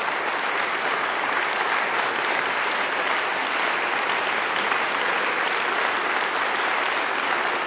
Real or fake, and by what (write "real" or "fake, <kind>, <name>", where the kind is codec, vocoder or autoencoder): real